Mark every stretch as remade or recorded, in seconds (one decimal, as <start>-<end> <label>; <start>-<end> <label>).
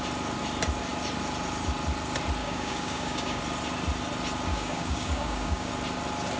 0.0-2.4 recorded; 2.4-3.4 remade; 3.4-4.5 recorded; 4.5-5.7 remade; 5.7-6.4 recorded